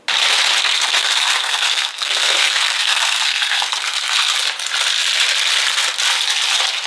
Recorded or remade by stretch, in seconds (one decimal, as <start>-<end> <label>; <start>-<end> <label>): 0.0-0.6 recorded; 0.6-4.3 remade; 4.3-6.9 recorded